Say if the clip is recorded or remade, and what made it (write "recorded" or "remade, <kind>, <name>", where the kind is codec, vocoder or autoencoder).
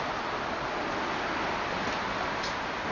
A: recorded